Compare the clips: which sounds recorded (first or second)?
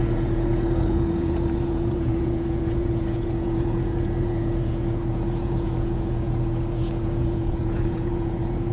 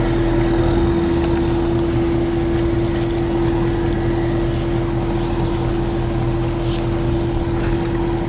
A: second